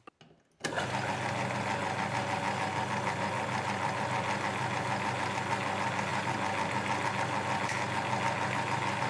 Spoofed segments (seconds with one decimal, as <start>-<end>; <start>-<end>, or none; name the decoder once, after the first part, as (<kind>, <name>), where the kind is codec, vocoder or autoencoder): none